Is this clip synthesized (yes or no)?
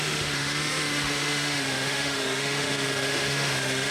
yes